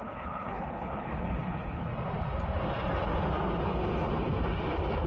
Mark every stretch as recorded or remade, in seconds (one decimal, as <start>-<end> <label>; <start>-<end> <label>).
0.0-1.9 remade; 1.9-5.1 recorded